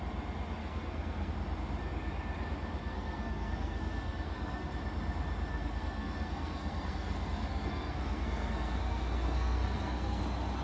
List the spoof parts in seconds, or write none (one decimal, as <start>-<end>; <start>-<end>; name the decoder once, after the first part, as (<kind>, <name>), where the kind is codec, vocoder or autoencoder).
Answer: 0.6-1.3 (codec, SNAC); 2.8-4.7; 5.5-10.2